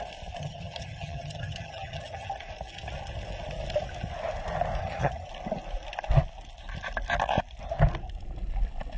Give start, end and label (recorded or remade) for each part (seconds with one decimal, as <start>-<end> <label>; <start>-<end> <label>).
0.0-0.4 recorded; 0.4-2.3 remade; 2.3-4.8 recorded; 4.8-5.3 remade; 5.3-9.0 recorded

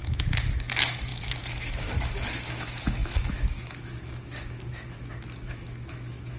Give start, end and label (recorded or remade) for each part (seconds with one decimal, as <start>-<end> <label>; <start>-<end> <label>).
0.0-6.4 remade

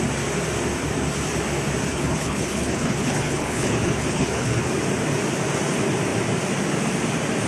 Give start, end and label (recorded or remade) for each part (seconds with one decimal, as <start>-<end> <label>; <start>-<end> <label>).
0.0-1.9 recorded; 1.9-4.7 remade; 4.7-7.5 recorded

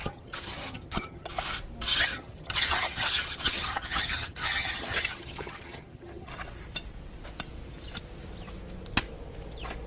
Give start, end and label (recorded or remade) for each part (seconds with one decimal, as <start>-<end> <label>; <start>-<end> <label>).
0.0-1.3 remade; 1.3-1.9 recorded; 1.9-6.3 remade; 6.3-9.9 recorded

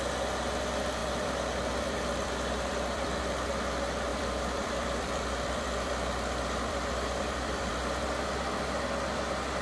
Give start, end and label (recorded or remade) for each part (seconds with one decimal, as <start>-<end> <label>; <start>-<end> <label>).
0.0-1.0 recorded; 1.0-3.5 remade; 3.5-4.1 recorded; 4.1-7.7 remade; 7.7-9.6 recorded

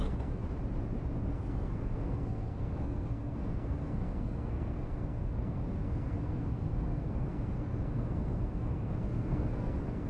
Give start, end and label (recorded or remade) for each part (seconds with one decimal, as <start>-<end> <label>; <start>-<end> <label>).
0.0-0.4 remade; 0.4-1.3 recorded; 1.3-10.1 remade